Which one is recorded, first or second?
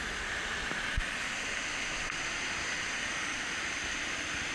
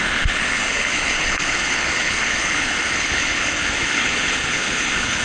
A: first